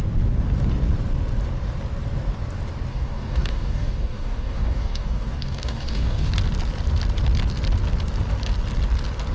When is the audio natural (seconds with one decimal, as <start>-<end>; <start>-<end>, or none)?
0.0-2.9; 6.3-9.3